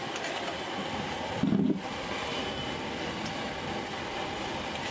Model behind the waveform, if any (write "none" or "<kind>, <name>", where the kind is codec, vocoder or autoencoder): none